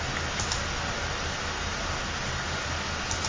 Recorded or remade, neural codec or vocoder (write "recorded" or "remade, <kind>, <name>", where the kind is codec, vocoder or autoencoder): recorded